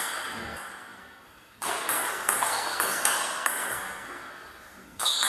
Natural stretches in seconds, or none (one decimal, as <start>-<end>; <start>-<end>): none

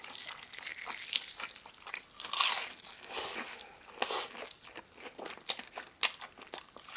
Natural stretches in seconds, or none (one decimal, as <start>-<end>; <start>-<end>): 0.0-7.0

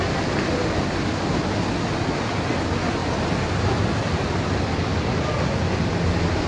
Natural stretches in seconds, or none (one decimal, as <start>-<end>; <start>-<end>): 0.0-6.5